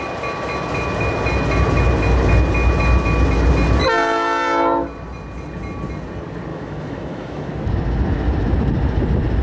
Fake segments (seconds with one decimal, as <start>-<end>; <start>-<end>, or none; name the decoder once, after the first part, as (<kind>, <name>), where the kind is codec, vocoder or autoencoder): 6.5-7.5 (autoencoder, DAC-VAE)